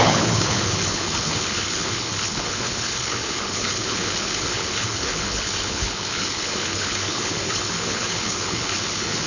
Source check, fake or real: fake